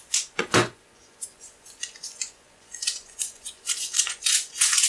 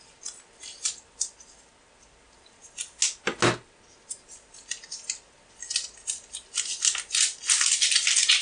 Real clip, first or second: second